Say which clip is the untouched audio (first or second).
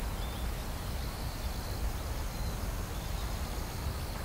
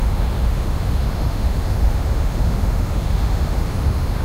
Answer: first